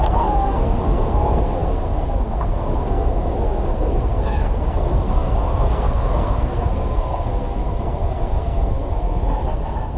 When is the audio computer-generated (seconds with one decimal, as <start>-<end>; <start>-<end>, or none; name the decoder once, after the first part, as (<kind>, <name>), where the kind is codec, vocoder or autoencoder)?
0.0-10.0 (codec, SNAC)